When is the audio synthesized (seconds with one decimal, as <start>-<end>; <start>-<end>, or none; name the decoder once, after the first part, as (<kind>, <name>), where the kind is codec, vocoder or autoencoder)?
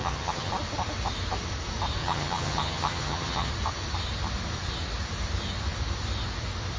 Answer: 0.0-0.5 (vocoder, HiFi-GAN); 2.0-3.5